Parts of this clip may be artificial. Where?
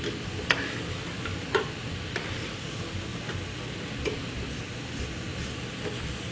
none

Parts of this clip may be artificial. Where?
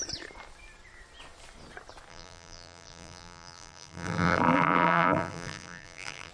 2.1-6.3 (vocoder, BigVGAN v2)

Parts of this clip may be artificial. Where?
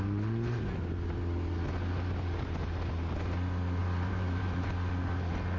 3.8-4.7 (vocoder, BigVGAN v2)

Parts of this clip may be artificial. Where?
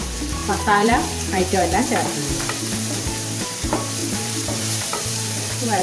0.0-5.8 (vocoder, BigVGAN v2)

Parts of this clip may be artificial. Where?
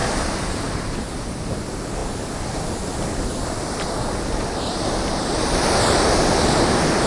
0.0-1.5 (vocoder, BigVGAN v2)